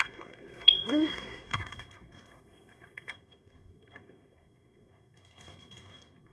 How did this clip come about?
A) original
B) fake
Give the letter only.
B